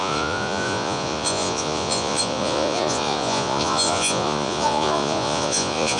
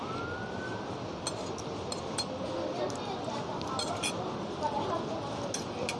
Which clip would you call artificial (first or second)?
first